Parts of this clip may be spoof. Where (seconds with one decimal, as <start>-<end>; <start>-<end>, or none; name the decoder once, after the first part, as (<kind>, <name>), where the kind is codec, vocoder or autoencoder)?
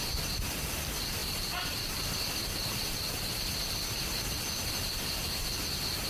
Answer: 1.2-4.7 (vocoder, BigVGAN v2)